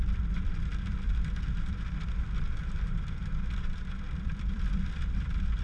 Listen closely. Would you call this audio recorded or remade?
remade